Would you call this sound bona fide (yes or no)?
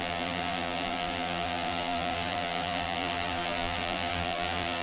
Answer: no